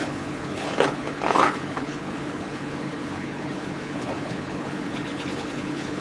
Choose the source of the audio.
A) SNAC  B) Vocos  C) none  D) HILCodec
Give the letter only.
D